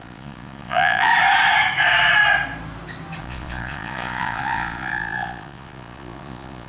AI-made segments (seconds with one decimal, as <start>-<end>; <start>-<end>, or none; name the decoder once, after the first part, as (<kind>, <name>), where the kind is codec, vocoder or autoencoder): 0.0-1.1 (vocoder, Vocos); 3.2-6.7